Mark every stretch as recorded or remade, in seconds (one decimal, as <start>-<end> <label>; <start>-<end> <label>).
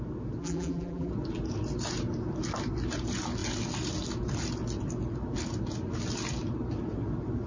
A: 0.0-0.4 recorded; 0.4-1.1 remade; 1.1-7.5 recorded